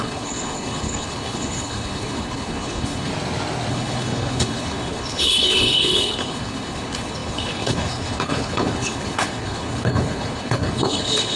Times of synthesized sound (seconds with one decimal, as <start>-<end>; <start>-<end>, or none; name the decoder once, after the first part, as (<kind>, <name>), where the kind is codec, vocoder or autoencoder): 0.0-3.1 (codec, HILCodec); 3.7-11.4